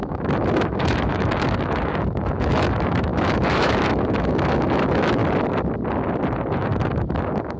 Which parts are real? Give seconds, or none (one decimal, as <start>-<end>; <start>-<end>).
5.2-6.5